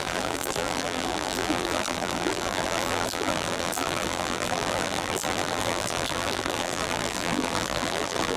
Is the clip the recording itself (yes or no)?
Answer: no